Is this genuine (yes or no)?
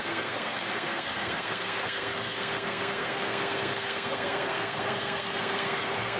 no